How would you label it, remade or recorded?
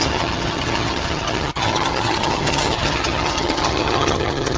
remade